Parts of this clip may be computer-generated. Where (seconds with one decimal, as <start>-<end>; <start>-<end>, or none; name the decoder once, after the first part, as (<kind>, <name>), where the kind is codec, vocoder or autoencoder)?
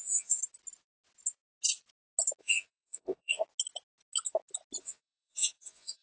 0.0-0.4 (vocoder, Vocos); 2.4-3.4; 4.8-6.0